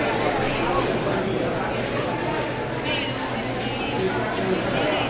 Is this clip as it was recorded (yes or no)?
yes